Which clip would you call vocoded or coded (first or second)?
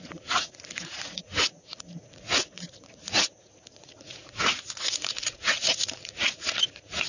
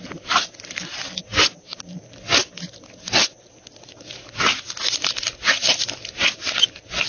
first